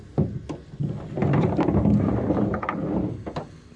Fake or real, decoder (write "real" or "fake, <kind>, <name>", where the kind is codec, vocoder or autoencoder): real